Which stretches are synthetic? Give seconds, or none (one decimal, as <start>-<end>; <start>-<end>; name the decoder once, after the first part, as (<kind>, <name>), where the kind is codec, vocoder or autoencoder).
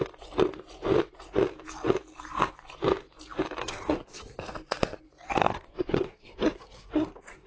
3.6-4.4 (codec, SNAC); 5.4-7.5